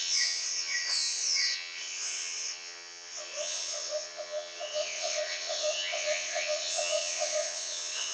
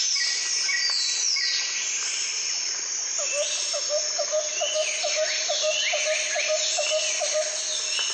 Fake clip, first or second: first